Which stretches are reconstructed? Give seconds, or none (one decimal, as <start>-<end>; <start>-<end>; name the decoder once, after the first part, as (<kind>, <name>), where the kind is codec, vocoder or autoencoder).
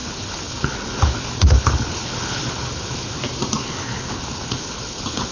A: 0.0-3.2 (codec, HILCodec); 3.6-5.3